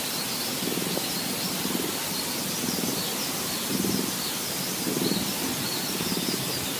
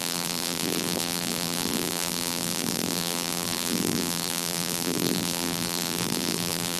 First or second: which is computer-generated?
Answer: second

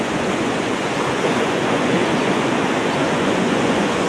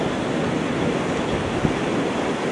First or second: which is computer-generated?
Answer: first